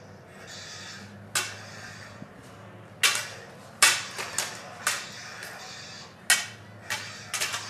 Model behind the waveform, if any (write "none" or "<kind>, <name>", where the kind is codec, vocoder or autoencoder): none